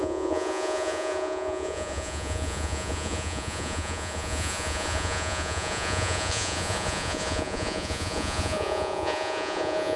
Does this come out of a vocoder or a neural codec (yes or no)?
yes